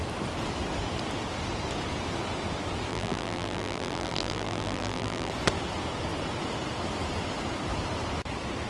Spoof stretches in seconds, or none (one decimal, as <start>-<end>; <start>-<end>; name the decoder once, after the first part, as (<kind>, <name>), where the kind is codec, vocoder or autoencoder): 2.9-5.3 (vocoder, BigVGAN v2)